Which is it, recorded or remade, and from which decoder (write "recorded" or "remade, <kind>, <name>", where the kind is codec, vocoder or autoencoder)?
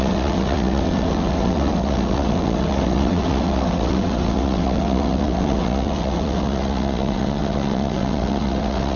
remade, vocoder, WaveNeXt